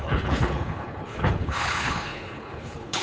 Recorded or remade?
remade